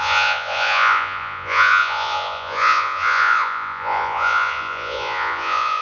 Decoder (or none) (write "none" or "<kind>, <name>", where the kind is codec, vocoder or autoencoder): vocoder, Vocos